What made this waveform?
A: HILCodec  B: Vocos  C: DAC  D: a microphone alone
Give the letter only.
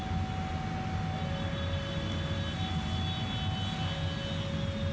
D